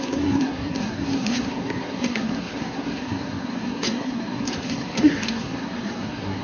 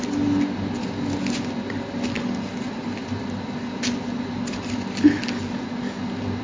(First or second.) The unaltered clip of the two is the second